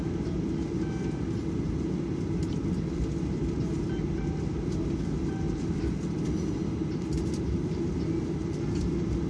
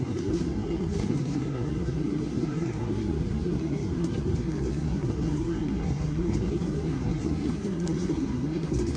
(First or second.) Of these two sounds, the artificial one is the second